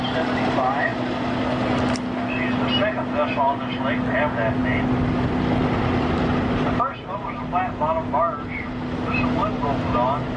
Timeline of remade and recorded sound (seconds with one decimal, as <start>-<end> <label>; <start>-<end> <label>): 0.0-10.4 recorded